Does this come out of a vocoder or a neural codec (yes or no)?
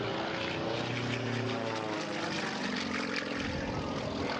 no